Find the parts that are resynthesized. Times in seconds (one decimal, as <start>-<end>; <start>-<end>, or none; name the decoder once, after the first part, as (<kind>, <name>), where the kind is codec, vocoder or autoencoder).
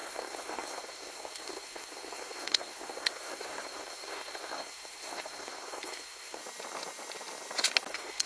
0.0-6.4 (codec, SNAC); 7.9-8.3